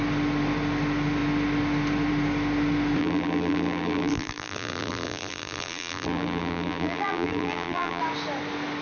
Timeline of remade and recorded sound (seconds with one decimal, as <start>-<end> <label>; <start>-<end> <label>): 0.0-3.0 recorded; 3.0-8.0 remade; 8.0-8.8 recorded